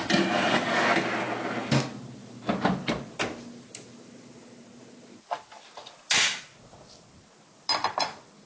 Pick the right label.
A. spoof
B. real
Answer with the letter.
B